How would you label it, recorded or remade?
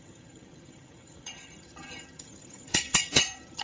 remade